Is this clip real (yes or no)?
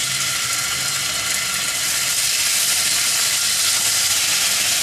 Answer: yes